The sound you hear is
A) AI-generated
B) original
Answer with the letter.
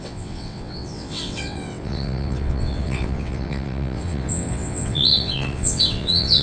A